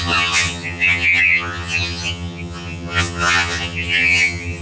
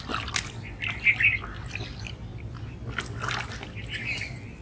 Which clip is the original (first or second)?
second